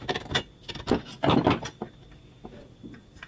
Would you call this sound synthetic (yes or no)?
no